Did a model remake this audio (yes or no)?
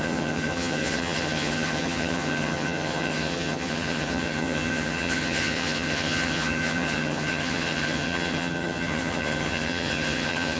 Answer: yes